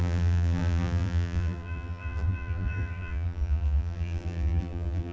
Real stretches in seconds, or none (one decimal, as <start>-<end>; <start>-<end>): none